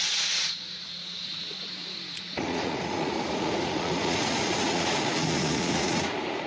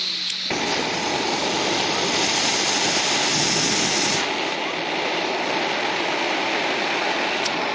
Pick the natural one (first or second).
second